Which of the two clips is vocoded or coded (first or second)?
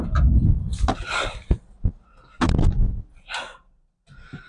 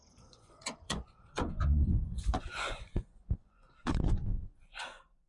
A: second